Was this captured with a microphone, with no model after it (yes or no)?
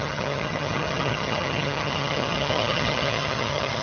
no